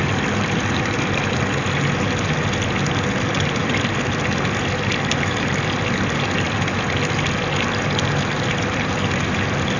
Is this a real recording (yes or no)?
yes